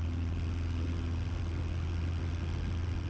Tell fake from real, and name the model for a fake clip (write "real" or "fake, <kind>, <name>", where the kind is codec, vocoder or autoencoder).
real